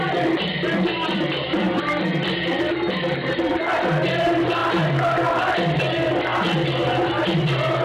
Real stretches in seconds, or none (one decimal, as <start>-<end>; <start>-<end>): 4.6-5.4